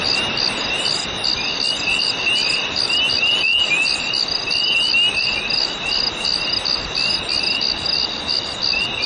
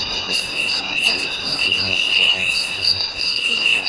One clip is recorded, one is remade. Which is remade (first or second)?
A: second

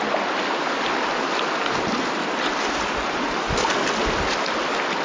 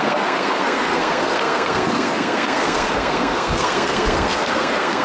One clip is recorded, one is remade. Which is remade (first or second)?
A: second